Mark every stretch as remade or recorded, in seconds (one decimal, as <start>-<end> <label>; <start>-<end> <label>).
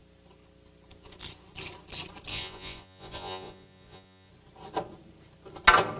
0.0-2.3 recorded; 2.3-4.3 remade; 4.3-6.0 recorded